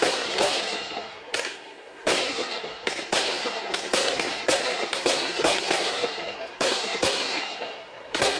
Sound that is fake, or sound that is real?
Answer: fake